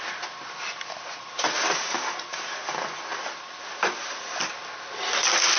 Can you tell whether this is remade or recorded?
recorded